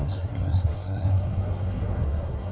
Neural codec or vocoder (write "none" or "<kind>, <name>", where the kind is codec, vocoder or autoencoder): codec, SNAC